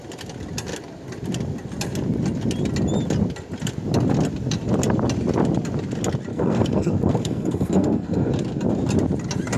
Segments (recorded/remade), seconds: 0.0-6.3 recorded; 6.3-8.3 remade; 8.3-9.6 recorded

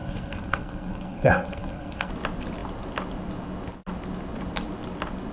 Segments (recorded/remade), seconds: 0.0-2.1 remade; 2.1-5.3 recorded

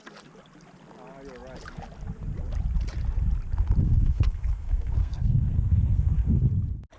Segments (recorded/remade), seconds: 0.0-3.8 recorded; 3.8-6.4 remade; 6.4-7.0 recorded